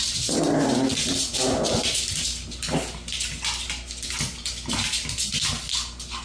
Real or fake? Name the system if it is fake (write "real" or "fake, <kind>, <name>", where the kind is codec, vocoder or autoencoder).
real